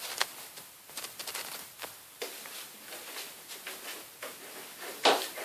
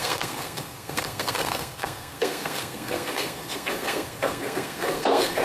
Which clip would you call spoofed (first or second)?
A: second